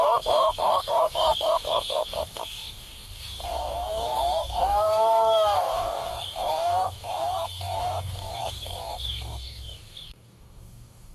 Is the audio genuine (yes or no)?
no